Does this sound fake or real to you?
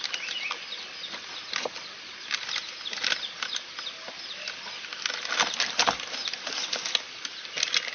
real